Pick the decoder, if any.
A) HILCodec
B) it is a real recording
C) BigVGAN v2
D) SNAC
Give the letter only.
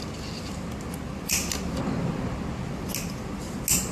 B